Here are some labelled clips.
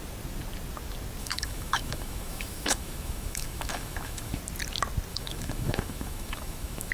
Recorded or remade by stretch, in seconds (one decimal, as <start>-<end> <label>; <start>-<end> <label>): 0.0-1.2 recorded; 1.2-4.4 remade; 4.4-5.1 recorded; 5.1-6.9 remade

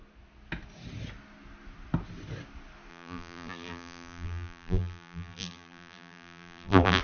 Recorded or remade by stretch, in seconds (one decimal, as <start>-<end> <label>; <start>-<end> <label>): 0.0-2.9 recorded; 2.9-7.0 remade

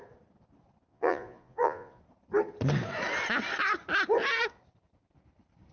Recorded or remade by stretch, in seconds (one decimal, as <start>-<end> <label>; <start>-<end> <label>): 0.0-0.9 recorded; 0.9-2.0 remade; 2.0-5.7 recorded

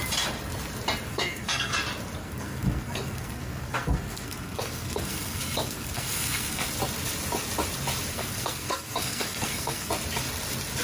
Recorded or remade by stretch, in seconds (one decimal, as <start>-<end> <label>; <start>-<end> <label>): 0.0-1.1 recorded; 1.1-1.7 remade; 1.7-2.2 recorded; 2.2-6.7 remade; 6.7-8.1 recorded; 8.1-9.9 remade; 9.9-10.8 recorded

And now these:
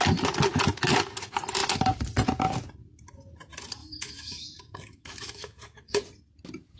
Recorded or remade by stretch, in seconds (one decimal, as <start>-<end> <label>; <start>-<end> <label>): 0.0-3.8 recorded; 3.8-6.0 remade; 6.0-6.8 recorded

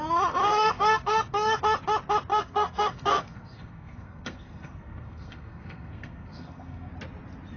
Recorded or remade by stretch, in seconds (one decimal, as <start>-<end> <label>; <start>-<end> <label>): 0.0-0.4 recorded; 0.4-1.6 remade; 1.6-2.3 recorded; 2.3-6.9 remade; 6.9-7.6 recorded

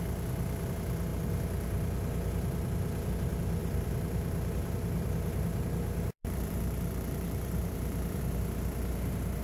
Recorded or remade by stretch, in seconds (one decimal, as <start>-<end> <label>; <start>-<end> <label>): 0.0-3.6 recorded; 3.6-8.2 remade; 8.2-9.4 recorded